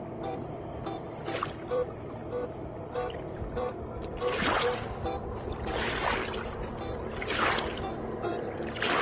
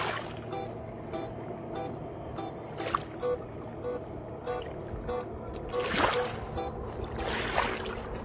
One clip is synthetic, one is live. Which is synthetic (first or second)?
first